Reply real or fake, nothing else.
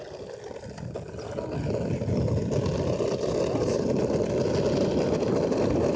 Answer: real